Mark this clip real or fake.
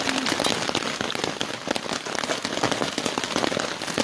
real